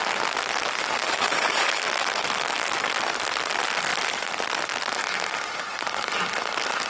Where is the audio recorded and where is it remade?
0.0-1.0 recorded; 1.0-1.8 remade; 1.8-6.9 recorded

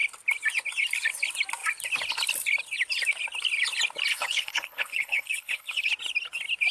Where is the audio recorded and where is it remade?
0.0-4.1 recorded; 4.1-5.9 remade; 5.9-6.7 recorded

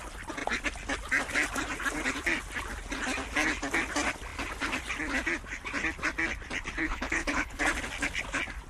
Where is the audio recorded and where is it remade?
0.0-6.8 recorded; 6.8-7.6 remade; 7.6-8.7 recorded

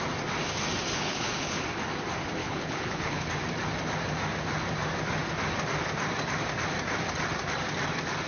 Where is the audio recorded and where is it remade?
0.0-0.9 recorded; 0.9-1.6 remade; 1.6-2.4 recorded; 2.4-3.3 remade; 3.3-8.3 recorded